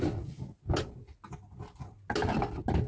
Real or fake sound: real